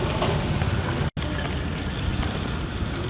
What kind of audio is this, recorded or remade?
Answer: recorded